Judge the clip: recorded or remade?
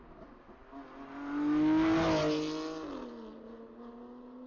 recorded